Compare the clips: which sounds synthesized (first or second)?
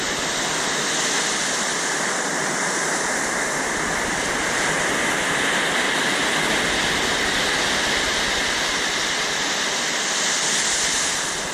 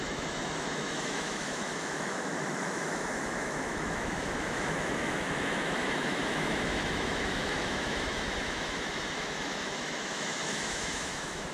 second